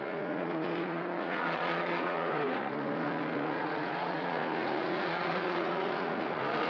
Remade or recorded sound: remade